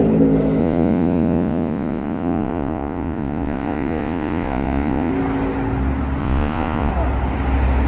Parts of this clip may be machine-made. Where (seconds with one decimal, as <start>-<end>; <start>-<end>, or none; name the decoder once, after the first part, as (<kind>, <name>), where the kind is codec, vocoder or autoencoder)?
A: 0.6-5.1 (vocoder, Vocos); 6.2-6.9